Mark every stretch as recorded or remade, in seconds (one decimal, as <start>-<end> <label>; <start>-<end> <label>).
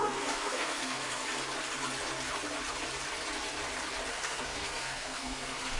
0.0-1.2 remade; 1.2-4.1 recorded; 4.1-5.8 remade